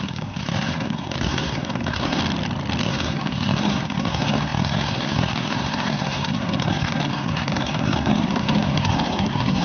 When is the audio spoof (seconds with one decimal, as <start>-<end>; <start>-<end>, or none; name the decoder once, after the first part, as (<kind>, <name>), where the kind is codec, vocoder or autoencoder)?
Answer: 0.0-2.2 (codec, SNAC); 2.8-9.6